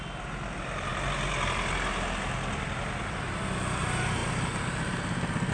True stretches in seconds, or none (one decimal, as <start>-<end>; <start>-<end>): 0.0-5.5